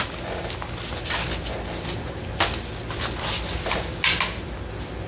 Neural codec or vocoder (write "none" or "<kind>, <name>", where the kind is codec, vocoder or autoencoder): none